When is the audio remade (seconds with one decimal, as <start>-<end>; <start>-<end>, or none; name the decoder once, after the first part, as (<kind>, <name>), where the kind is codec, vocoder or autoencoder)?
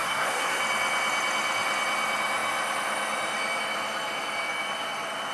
0.0-0.6 (codec, SNAC)